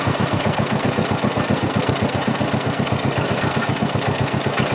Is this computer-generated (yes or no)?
yes